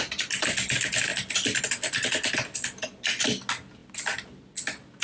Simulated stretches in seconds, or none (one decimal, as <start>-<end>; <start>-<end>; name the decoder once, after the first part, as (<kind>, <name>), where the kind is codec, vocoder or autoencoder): none